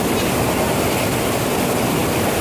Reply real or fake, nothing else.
real